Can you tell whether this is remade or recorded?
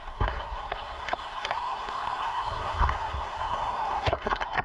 remade